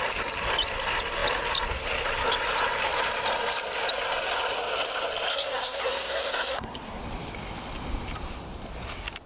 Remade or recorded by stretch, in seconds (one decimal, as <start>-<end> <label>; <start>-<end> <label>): 0.0-5.3 recorded; 5.3-7.0 remade; 7.0-9.3 recorded